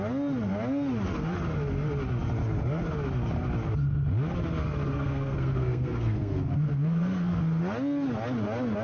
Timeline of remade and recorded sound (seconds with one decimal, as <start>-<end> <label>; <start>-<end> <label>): 0.0-4.9 recorded; 4.9-7.4 remade; 7.4-8.8 recorded